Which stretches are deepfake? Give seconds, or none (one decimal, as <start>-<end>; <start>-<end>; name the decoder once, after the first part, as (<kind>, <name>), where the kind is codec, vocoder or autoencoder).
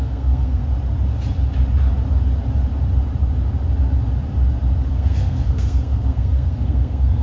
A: 0.0-0.6 (codec, SNAC); 4.9-7.2